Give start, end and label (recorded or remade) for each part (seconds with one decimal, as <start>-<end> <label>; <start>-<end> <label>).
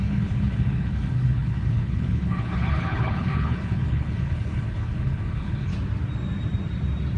0.0-5.7 remade; 5.7-7.2 recorded